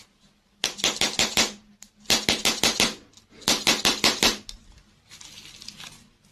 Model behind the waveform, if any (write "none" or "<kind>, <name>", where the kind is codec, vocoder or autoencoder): none